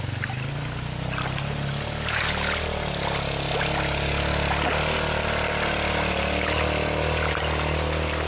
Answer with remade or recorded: recorded